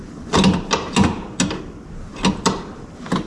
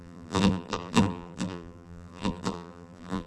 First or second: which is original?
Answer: first